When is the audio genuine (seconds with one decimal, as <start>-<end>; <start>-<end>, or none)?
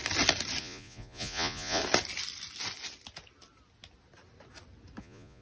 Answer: 0.0-0.6; 1.8-5.0